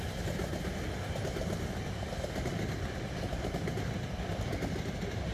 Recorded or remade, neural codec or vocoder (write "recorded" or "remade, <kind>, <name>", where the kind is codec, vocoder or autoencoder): recorded